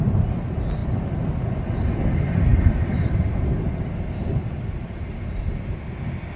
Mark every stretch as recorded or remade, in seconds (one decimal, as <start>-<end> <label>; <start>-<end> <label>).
0.0-6.4 recorded